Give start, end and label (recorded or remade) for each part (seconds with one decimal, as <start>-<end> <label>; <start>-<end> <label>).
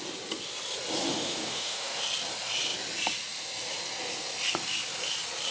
0.0-1.1 recorded; 1.1-2.0 remade; 2.0-5.5 recorded